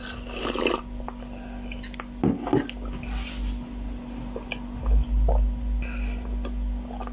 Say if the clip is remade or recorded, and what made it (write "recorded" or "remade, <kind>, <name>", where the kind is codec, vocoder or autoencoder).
recorded